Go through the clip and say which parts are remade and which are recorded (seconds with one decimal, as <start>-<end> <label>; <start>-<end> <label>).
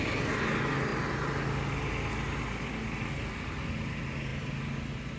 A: 0.0-5.2 recorded